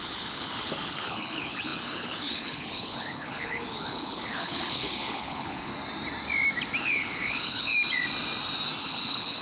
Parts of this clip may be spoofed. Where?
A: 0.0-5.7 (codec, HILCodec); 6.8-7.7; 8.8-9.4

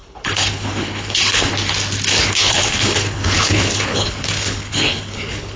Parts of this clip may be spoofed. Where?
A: 0.0-1.5 (codec, HILCodec); 2.1-5.6

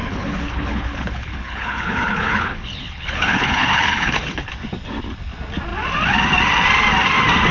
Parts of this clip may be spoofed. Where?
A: 0.0-4.5 (codec, HILCodec)

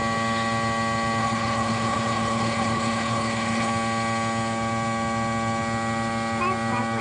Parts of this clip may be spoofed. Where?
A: 1.2-3.7 (codec, HILCodec)

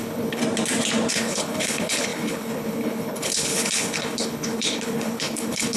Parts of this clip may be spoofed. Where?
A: 0.0-0.4 (codec, HILCodec); 1.1-5.8